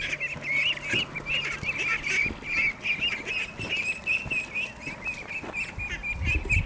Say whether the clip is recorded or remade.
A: recorded